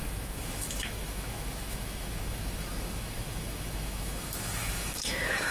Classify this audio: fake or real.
fake